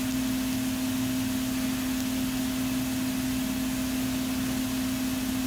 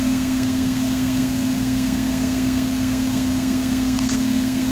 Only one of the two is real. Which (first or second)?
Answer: first